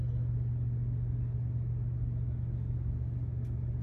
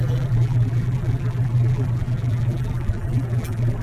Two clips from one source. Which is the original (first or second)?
first